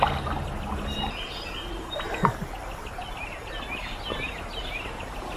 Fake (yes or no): no